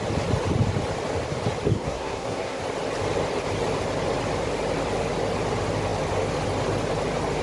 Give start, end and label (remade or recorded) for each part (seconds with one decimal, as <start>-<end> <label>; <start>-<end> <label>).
0.0-1.7 recorded; 1.7-2.6 remade; 2.6-7.4 recorded